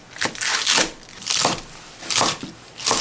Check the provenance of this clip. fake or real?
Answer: real